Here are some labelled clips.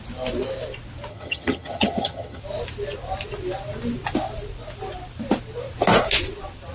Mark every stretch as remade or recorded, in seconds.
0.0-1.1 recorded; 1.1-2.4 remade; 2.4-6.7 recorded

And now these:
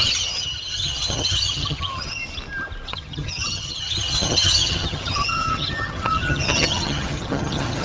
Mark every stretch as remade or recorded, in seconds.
0.0-2.2 remade; 2.2-2.9 recorded; 2.9-7.8 remade

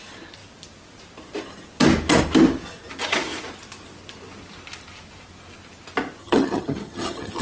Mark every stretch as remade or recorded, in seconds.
0.0-6.2 recorded; 6.2-7.4 remade

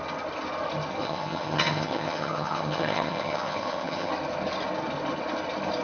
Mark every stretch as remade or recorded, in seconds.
0.0-1.0 recorded; 1.0-4.1 remade; 4.1-5.8 recorded

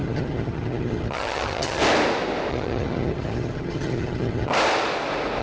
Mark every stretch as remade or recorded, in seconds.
0.0-1.8 remade; 1.8-2.5 recorded; 2.5-4.5 remade; 4.5-5.4 recorded

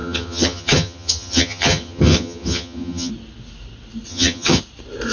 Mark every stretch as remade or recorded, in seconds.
0.0-3.1 remade; 3.1-4.1 recorded; 4.1-4.6 remade; 4.6-5.1 recorded